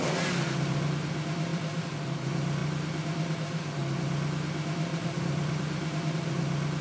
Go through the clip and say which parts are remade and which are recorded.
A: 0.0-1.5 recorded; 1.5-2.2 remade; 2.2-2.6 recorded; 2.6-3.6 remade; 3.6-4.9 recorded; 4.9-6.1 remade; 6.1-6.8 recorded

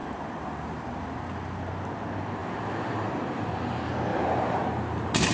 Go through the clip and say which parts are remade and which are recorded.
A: 0.0-2.4 recorded; 2.4-3.5 remade; 3.5-4.1 recorded; 4.1-5.3 remade